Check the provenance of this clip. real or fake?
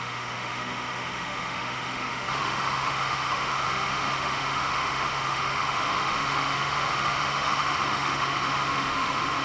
fake